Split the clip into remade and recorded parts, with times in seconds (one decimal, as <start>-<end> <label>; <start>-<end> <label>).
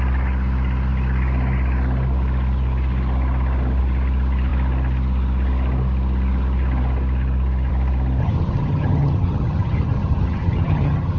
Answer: 0.0-8.2 recorded; 8.2-11.2 remade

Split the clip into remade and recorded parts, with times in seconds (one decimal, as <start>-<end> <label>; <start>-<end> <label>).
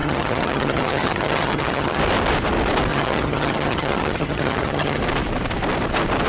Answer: 0.0-2.0 remade; 2.0-2.9 recorded; 2.9-5.0 remade; 5.0-6.3 recorded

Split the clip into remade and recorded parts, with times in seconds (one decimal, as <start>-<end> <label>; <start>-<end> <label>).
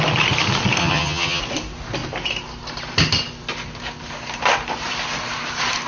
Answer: 0.0-0.8 recorded; 0.8-1.4 remade; 1.4-5.9 recorded